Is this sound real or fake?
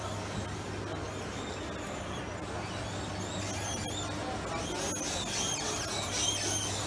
real